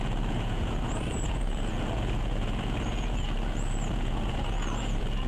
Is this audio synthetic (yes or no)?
yes